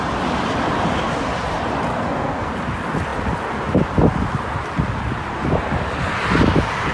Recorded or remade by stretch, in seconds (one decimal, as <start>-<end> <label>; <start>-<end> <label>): 0.0-1.9 recorded; 1.9-2.5 remade; 2.5-6.9 recorded